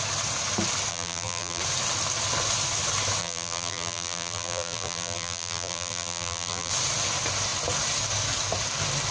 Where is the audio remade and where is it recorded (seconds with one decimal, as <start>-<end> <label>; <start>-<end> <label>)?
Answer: 0.0-0.9 recorded; 0.9-1.6 remade; 1.6-3.2 recorded; 3.2-6.7 remade; 6.7-9.1 recorded